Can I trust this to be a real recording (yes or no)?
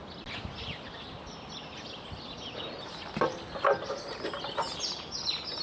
yes